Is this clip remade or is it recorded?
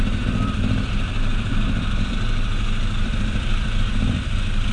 remade